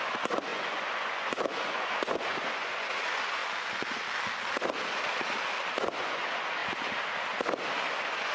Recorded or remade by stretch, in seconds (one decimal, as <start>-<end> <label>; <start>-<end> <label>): 0.0-3.4 remade; 3.4-5.8 recorded; 5.8-6.6 remade; 6.6-7.9 recorded; 7.9-8.3 remade